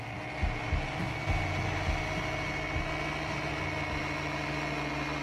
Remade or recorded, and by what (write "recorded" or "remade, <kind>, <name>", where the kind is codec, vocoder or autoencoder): recorded